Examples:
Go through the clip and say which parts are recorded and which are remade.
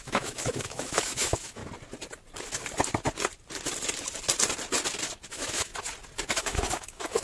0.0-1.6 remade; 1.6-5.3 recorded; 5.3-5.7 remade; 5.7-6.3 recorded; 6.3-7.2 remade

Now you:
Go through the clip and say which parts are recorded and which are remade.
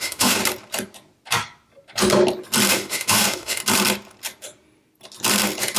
0.0-0.4 remade; 0.4-2.7 recorded; 2.7-3.6 remade; 3.6-5.8 recorded